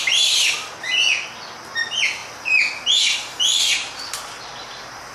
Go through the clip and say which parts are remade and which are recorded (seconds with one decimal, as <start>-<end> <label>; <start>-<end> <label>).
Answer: 0.0-5.1 recorded